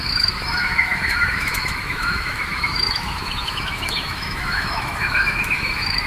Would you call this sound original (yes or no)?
no